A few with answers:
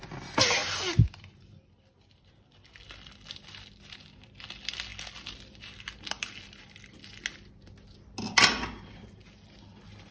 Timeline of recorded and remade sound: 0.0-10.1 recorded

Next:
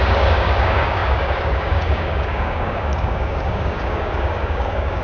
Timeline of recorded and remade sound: 0.0-5.0 remade

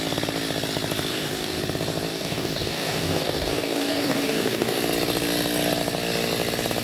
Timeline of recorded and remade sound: 0.0-1.1 recorded; 1.1-1.6 remade; 1.6-2.1 recorded; 2.1-4.8 remade; 4.8-6.8 recorded

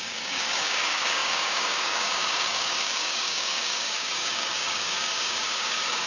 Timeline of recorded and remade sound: 0.0-6.1 remade

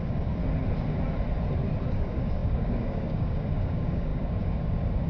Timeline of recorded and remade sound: 0.0-0.4 remade; 0.4-1.9 recorded; 1.9-5.1 remade

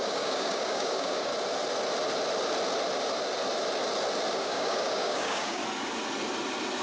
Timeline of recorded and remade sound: 0.0-1.3 remade; 1.3-4.3 recorded; 4.3-5.6 remade; 5.6-6.8 recorded